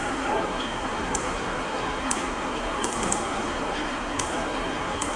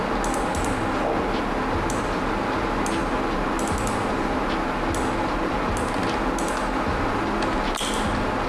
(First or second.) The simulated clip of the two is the first